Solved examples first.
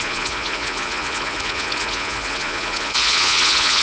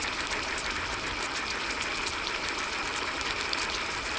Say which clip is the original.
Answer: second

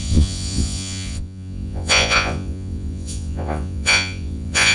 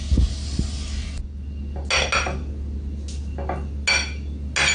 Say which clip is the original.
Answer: second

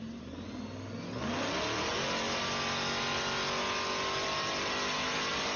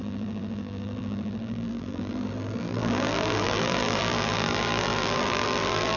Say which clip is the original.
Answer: first